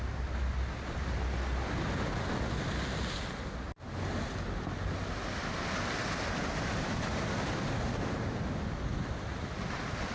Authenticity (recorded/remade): recorded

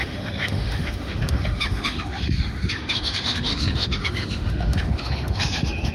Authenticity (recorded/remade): remade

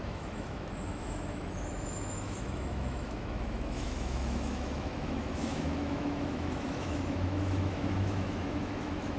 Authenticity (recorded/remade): remade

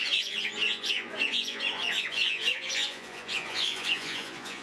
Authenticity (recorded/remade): remade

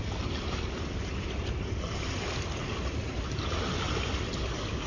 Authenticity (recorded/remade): recorded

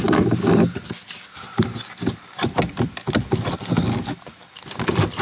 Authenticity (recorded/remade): recorded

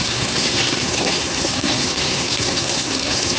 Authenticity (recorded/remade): remade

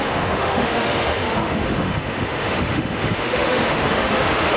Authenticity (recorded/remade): remade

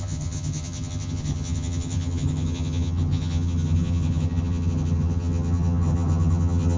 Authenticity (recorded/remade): remade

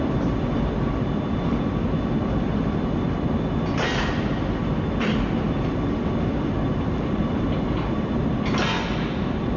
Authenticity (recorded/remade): recorded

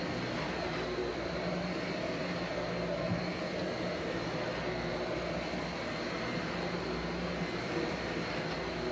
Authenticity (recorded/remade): recorded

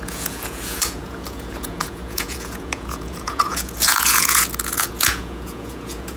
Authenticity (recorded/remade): remade